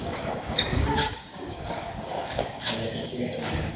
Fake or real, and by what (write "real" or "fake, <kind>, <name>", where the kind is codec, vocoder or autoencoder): fake, codec, DAC